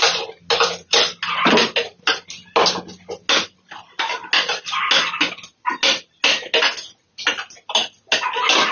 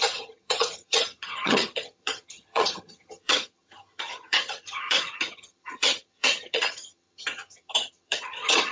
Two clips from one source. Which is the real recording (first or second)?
first